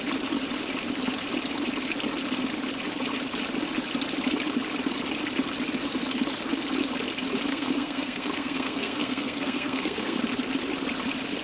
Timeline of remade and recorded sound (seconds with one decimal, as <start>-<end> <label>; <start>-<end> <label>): 0.0-7.5 recorded; 7.5-10.2 remade; 10.2-11.4 recorded